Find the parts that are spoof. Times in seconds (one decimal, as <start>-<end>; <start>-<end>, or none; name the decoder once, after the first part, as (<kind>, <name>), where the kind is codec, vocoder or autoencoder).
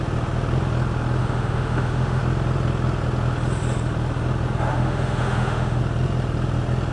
1.2-2.2 (autoencoder, DAC-VAE); 4.7-5.8